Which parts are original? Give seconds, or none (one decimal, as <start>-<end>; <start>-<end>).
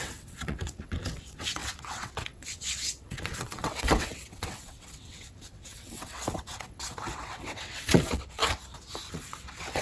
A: 8.4-9.1